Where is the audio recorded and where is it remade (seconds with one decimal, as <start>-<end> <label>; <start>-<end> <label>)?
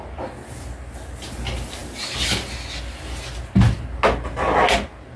0.0-5.2 recorded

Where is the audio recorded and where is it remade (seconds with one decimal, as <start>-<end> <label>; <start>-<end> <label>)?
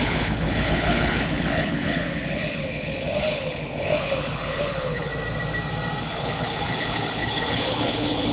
0.0-5.1 remade; 5.1-6.0 recorded; 6.0-8.3 remade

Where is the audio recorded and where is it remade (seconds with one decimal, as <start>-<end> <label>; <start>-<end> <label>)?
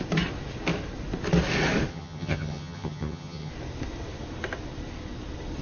0.0-1.9 recorded; 1.9-3.5 remade; 3.5-5.6 recorded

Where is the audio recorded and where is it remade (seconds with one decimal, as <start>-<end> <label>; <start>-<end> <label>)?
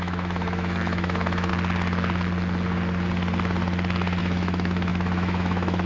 0.0-1.5 remade; 1.5-4.2 recorded; 4.2-5.9 remade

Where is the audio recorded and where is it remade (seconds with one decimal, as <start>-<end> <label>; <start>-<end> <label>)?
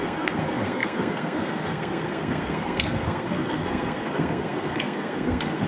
0.0-5.7 remade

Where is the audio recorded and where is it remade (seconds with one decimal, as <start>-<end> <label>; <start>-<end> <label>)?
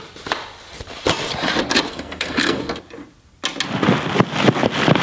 0.0-1.9 recorded; 1.9-2.6 remade; 2.6-5.0 recorded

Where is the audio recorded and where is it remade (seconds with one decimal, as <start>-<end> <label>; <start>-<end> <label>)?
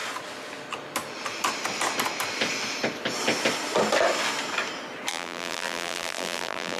0.0-5.1 recorded; 5.1-6.8 remade